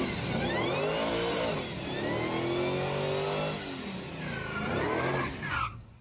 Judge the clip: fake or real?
real